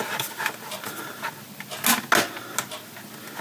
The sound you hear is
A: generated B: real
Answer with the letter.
B